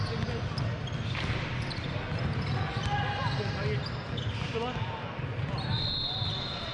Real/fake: real